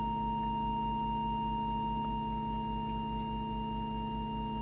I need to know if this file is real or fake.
real